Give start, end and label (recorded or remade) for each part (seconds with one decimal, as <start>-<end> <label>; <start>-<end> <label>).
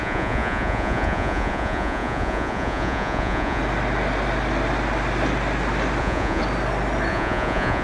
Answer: 0.0-3.6 remade; 3.6-6.0 recorded; 6.0-6.4 remade; 6.4-7.1 recorded; 7.1-7.8 remade